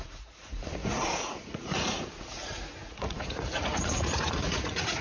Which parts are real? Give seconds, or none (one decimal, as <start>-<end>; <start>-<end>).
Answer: none